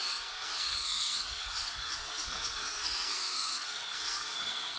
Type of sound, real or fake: fake